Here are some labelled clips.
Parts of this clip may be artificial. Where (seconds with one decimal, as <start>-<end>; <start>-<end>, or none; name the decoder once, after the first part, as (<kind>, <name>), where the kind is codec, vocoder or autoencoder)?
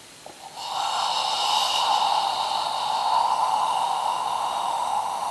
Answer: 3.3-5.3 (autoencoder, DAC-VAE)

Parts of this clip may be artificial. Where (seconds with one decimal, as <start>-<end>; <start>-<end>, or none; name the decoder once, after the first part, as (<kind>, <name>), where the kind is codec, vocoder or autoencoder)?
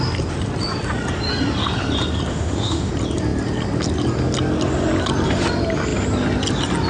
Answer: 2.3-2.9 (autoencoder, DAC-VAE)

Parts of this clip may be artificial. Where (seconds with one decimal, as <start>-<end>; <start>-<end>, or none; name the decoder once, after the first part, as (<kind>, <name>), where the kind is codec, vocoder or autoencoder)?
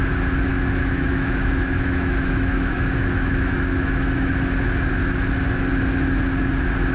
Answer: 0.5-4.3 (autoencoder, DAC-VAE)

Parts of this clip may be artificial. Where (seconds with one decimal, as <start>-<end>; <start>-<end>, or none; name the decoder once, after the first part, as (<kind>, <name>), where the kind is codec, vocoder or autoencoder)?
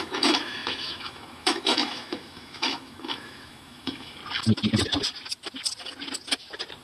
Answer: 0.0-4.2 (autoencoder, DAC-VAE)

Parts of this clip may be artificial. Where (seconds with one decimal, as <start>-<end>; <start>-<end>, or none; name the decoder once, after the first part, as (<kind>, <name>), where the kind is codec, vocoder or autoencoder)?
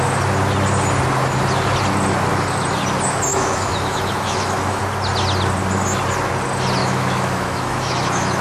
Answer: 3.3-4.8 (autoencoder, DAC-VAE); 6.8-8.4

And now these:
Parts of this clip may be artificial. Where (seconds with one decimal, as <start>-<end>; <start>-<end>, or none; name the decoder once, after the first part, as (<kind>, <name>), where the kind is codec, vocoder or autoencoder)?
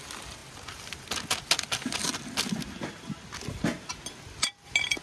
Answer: none